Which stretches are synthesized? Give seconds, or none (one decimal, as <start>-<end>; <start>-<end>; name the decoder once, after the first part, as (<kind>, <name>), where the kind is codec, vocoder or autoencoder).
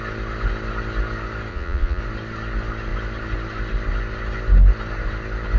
1.5-2.0 (vocoder, Vocos)